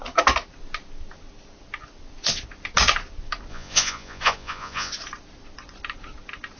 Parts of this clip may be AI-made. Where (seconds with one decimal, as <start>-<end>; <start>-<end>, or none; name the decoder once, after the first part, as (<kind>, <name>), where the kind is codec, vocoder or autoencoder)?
3.5-4.9 (vocoder, Vocos)

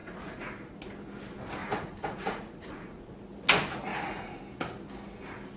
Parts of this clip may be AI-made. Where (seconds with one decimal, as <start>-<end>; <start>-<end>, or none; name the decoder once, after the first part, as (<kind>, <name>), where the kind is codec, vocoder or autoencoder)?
0.0-0.5 (vocoder, Vocos); 1.6-3.0; 3.9-4.4